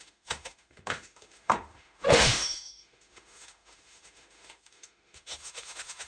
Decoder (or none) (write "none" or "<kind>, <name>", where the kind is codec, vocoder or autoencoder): autoencoder, DAC-VAE